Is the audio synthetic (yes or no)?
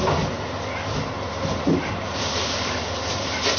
no